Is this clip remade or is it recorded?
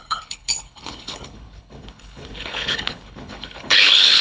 remade